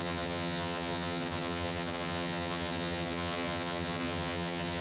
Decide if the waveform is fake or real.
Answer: fake